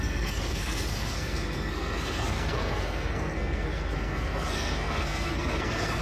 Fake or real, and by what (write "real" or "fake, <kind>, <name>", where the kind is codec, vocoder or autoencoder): fake, codec, SNAC